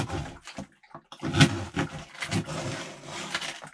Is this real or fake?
real